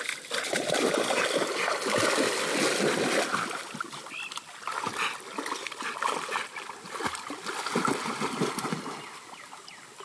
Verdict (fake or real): real